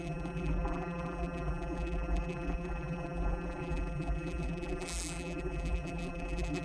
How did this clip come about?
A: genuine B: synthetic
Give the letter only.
B